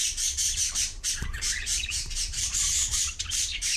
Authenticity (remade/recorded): remade